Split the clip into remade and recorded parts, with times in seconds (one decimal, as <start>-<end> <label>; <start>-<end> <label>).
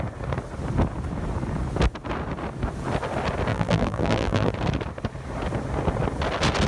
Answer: 0.0-3.5 recorded; 3.5-4.5 remade; 4.5-6.7 recorded